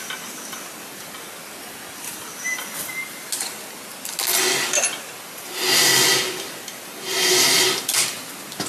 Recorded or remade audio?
recorded